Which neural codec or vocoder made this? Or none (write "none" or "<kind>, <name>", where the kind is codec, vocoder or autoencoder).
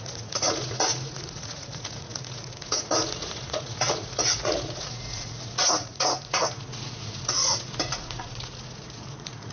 vocoder, Vocos